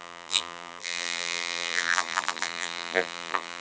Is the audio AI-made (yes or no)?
yes